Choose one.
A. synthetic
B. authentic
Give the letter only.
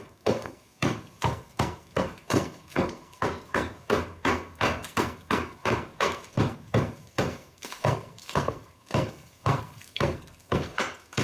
A